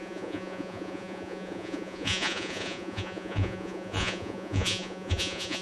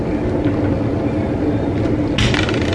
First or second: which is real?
second